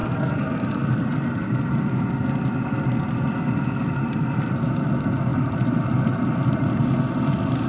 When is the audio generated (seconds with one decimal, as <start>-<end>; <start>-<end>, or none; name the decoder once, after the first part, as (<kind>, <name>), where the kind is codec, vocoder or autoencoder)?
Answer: 0.0-2.0 (vocoder, BigVGAN v2); 5.3-5.8